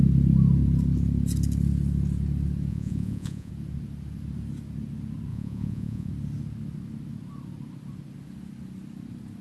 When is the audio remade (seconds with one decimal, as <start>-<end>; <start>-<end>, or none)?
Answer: 2.7-3.5; 5.3-6.1

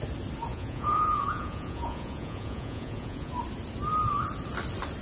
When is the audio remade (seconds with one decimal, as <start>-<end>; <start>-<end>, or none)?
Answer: 0.5-3.3

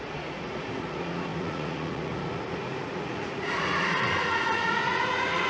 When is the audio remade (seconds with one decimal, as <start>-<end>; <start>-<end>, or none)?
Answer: 0.0-5.5

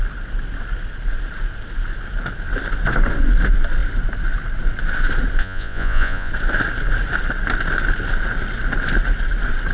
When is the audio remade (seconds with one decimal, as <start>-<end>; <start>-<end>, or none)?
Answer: 5.4-6.3

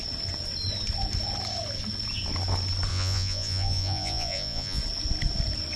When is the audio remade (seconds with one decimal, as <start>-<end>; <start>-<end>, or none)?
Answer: 2.9-4.8

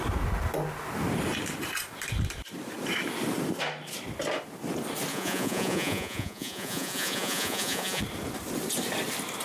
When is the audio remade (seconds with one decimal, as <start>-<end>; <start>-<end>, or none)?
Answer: 5.1-8.0

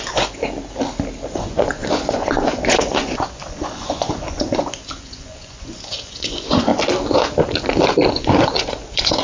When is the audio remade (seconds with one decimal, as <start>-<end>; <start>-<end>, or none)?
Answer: 0.0-0.4; 1.3-6.7; 8.1-9.2